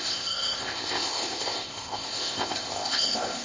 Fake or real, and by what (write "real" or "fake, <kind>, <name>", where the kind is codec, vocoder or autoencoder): fake, codec, ZipCodec